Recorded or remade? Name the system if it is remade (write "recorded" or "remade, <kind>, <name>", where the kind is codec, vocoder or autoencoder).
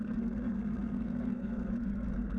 remade, codec, SNAC